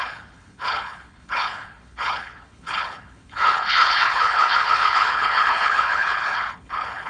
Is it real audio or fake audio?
fake